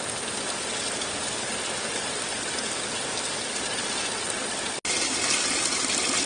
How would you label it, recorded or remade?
recorded